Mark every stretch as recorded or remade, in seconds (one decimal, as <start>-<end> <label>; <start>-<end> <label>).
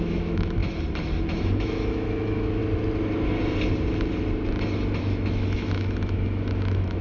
0.0-0.6 remade; 0.6-1.4 recorded; 1.4-2.6 remade; 2.6-5.0 recorded; 5.0-7.0 remade